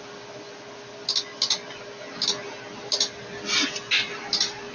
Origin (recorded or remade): recorded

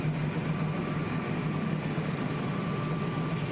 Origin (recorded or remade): recorded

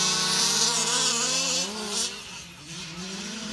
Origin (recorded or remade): remade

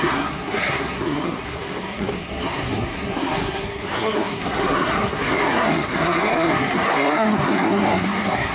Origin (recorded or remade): remade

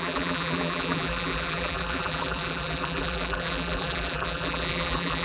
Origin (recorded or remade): remade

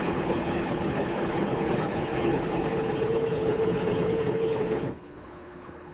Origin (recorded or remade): remade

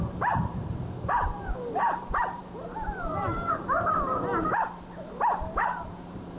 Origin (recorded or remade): remade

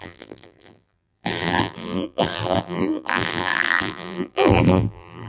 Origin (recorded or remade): remade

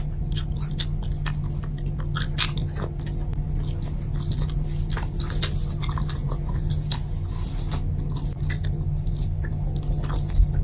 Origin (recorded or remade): recorded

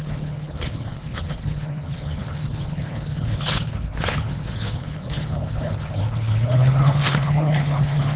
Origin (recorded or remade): remade